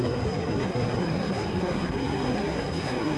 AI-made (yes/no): yes